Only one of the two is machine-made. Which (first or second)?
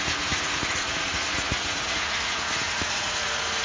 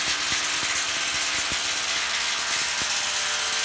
first